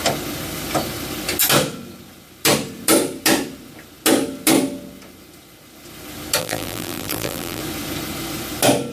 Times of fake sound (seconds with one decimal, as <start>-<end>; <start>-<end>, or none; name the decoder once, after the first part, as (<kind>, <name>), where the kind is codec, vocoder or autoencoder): 6.4-7.6 (vocoder, BigVGAN v2)